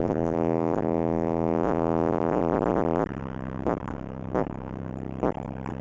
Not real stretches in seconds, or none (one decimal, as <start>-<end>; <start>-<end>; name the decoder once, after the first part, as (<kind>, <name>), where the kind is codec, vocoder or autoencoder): 0.0-2.4 (codec, DAC); 3.2-4.9